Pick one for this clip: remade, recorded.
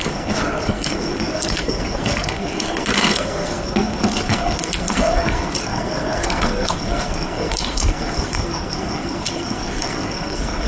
remade